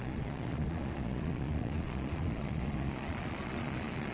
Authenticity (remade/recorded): remade